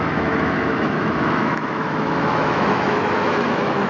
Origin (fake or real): fake